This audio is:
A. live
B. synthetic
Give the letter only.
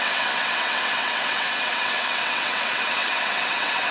B